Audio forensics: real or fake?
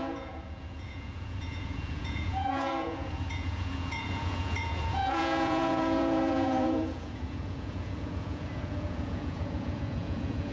fake